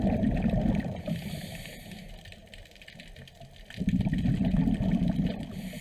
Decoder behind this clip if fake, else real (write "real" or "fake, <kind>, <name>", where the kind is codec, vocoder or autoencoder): real